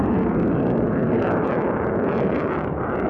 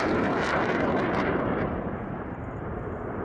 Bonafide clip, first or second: first